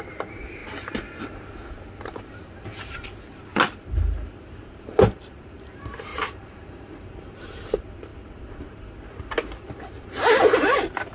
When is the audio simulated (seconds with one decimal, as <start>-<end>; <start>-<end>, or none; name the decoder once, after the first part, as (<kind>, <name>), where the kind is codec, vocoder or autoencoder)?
0.0-0.6 (vocoder, BigVGAN v2); 1.2-3.5; 4.9-8.1; 9.6-11.1